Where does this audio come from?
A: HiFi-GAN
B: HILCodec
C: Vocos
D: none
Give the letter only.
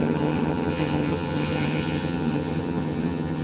A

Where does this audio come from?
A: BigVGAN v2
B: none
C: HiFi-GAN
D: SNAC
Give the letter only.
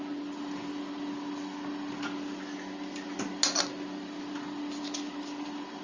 B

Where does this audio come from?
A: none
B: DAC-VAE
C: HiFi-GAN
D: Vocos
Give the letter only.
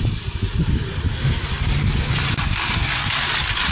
A